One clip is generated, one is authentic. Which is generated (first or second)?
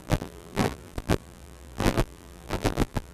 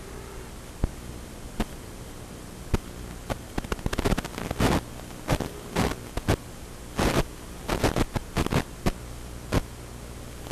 first